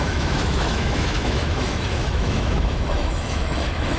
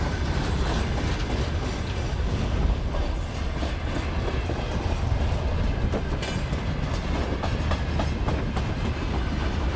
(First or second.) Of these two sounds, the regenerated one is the first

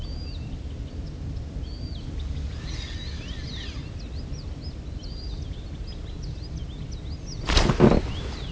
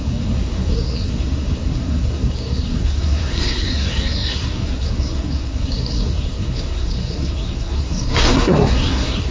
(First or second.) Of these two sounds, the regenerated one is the second